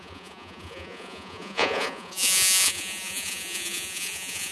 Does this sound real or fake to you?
fake